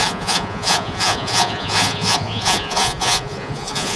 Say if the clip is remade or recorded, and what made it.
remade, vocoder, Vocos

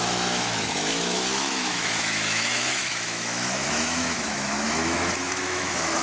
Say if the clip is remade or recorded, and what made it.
remade, autoencoder, DAC-VAE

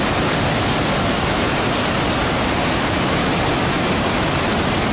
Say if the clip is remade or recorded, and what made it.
recorded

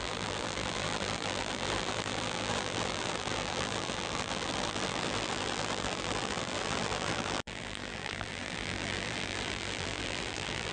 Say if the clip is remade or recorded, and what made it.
remade, vocoder, BigVGAN v2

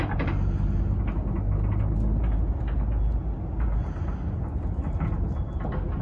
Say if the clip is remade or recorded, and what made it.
recorded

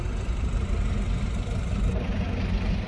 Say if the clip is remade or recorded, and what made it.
recorded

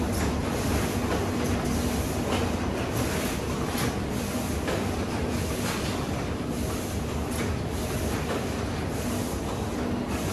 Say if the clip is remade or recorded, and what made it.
recorded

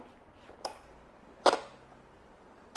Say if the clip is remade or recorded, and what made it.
recorded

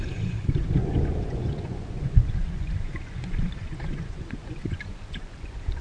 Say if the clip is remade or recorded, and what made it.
remade, vocoder, Vocos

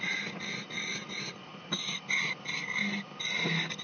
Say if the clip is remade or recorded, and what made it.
recorded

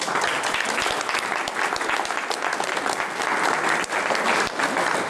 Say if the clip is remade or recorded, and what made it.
recorded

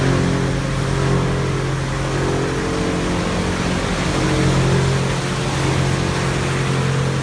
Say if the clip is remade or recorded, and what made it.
recorded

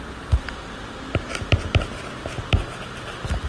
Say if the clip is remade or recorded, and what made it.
recorded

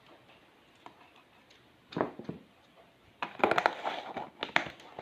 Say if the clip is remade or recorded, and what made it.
recorded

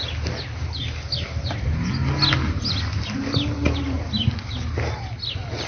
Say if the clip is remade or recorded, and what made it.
recorded